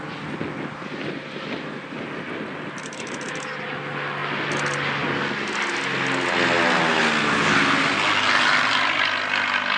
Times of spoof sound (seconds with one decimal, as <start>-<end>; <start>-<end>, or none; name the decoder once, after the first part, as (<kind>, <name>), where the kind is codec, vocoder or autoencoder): none